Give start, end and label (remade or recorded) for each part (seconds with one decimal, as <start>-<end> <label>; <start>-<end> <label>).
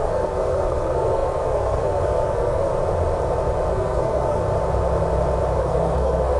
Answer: 0.0-2.7 remade; 2.7-3.7 recorded; 3.7-4.4 remade; 4.4-5.6 recorded; 5.6-6.4 remade